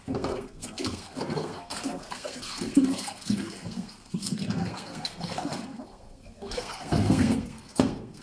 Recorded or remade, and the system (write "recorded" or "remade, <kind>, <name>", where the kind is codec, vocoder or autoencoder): remade, codec, SNAC